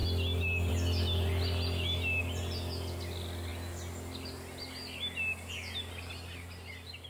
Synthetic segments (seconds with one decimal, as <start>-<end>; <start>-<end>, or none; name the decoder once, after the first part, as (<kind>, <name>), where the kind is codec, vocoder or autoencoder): none